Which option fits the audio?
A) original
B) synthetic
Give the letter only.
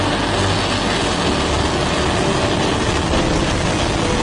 A